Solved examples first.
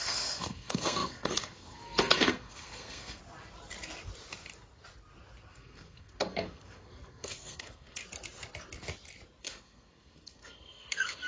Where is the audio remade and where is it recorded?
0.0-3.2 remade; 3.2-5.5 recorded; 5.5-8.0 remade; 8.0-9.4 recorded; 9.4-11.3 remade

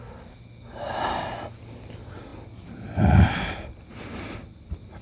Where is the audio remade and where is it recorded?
0.0-5.0 recorded

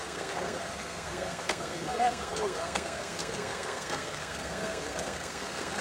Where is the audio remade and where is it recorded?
0.0-5.8 remade

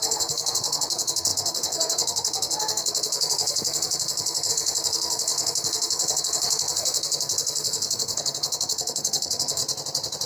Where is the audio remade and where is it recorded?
0.0-9.6 remade; 9.6-10.3 recorded

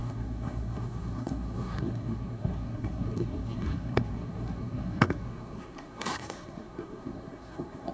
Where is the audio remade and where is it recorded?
0.0-7.9 remade

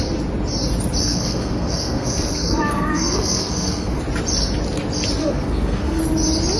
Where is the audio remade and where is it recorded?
0.0-1.0 recorded; 1.0-4.0 remade; 4.0-5.2 recorded; 5.2-6.0 remade; 6.0-6.6 recorded

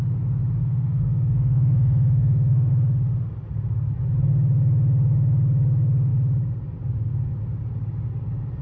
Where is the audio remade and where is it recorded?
0.0-0.6 recorded; 0.6-2.7 remade; 2.7-8.6 recorded

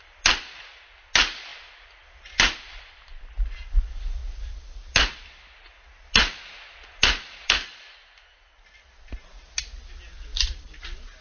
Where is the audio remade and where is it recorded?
0.0-11.2 recorded